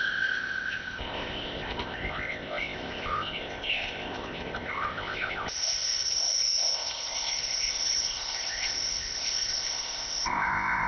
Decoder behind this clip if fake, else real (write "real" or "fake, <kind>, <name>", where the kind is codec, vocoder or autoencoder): fake, codec, ZipCodec